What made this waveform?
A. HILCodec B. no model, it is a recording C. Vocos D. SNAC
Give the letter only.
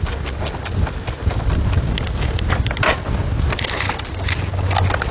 B